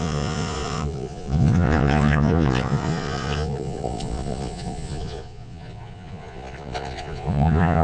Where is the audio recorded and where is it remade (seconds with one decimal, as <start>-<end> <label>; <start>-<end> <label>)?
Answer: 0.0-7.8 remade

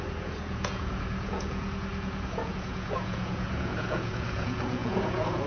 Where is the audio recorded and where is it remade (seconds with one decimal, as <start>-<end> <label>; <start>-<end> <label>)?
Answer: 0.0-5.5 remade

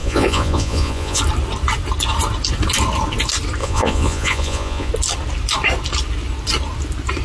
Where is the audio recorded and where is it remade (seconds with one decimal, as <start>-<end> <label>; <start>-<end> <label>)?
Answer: 0.0-1.2 remade; 1.2-3.6 recorded; 3.6-4.9 remade; 4.9-7.2 recorded

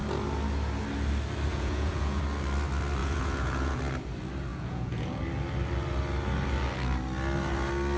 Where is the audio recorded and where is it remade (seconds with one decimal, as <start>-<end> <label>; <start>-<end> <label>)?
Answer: 0.0-1.5 recorded; 1.5-2.2 remade; 2.2-3.0 recorded; 3.0-3.8 remade; 3.8-4.5 recorded; 4.5-5.2 remade; 5.2-8.0 recorded